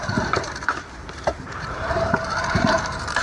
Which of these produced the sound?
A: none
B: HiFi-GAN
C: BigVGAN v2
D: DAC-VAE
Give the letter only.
C